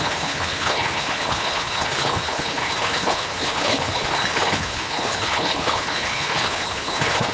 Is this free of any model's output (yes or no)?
no